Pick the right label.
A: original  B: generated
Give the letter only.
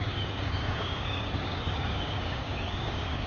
B